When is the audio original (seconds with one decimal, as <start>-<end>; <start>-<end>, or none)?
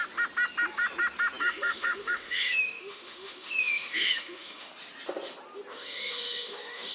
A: 0.0-1.4; 4.7-5.7